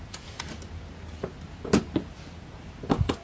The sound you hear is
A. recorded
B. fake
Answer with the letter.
A